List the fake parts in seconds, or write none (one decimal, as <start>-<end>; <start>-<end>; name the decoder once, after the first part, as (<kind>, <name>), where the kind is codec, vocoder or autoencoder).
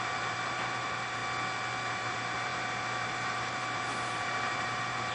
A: 0.0-1.2 (vocoder, BigVGAN v2); 1.9-5.1